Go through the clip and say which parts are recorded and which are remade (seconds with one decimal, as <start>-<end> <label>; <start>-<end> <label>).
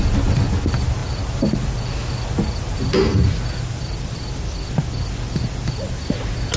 0.0-6.6 recorded